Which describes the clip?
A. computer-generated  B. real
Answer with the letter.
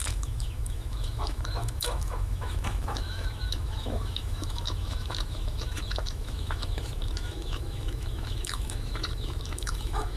A